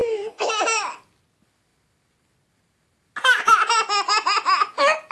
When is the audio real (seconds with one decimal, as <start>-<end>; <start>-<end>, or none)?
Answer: 0.5-5.1